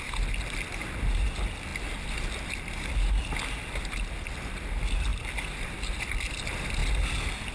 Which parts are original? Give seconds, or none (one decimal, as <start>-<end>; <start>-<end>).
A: 0.0-7.5